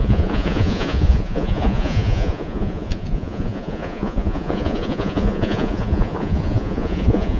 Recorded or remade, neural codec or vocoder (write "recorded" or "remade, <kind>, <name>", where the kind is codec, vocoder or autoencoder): remade, vocoder, Vocos